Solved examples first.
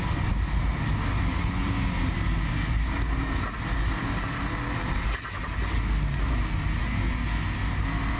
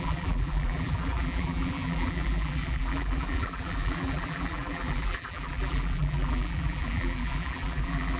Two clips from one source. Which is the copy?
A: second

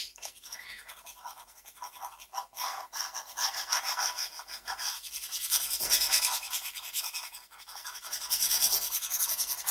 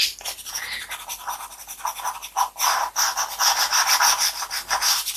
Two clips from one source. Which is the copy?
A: first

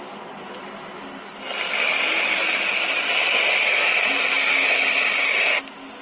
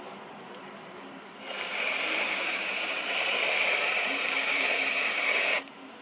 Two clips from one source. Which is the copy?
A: second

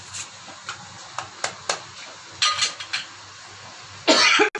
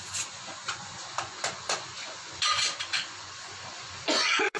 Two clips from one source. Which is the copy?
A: second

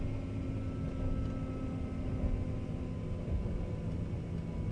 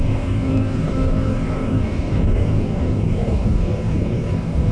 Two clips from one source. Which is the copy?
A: second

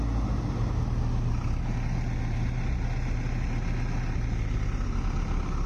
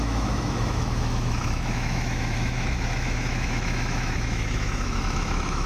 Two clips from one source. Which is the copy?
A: second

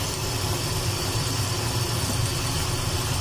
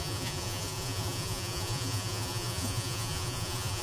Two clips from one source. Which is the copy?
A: second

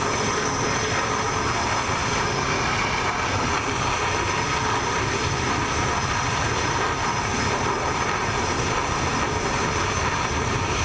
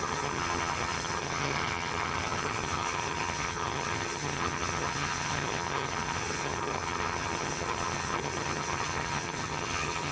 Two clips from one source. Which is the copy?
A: second